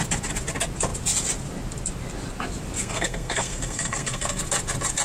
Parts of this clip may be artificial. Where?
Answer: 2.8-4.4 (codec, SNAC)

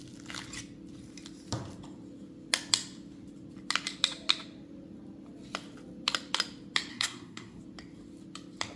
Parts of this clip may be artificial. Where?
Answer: 6.9-7.6 (codec, SNAC)